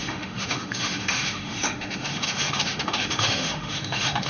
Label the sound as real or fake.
fake